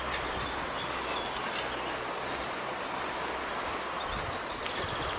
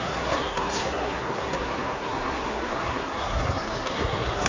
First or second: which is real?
first